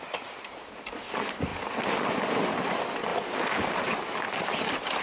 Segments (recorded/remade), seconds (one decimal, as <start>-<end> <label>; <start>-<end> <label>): 0.0-5.0 recorded